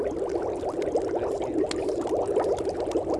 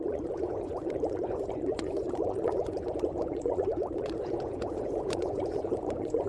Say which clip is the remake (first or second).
second